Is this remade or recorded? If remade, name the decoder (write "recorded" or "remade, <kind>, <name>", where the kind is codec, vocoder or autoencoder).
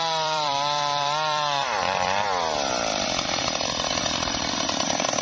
remade, vocoder, BigVGAN v2